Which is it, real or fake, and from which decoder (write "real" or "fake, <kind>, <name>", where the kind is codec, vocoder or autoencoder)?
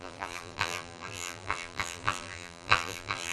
fake, vocoder, BigVGAN v2